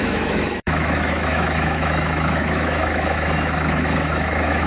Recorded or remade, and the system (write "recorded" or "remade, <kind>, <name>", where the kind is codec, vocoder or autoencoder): remade, autoencoder, DAC-VAE